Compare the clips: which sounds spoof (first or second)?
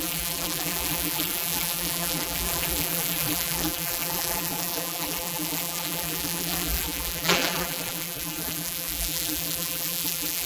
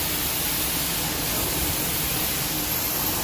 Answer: first